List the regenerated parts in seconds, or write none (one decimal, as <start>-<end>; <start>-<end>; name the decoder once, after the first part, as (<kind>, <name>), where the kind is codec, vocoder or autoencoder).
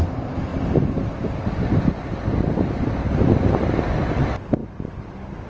none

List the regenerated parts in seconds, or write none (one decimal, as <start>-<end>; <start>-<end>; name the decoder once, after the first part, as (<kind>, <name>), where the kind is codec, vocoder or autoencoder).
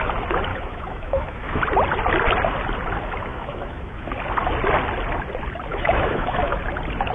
0.5-1.6 (autoencoder, DAC-VAE); 3.3-4.1; 5.7-6.6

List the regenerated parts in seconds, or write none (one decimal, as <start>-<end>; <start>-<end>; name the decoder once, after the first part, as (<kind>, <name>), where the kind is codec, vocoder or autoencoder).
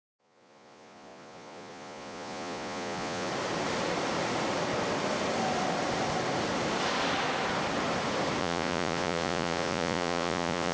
0.0-3.3 (vocoder, Vocos); 8.4-10.7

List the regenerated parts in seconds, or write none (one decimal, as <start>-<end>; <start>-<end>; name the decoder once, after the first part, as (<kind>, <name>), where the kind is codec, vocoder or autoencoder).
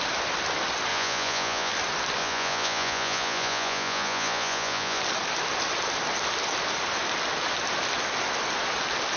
0.9-1.7 (vocoder, Vocos); 2.2-5.0